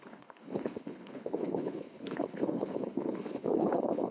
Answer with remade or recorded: remade